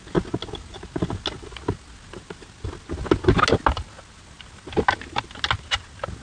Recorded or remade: recorded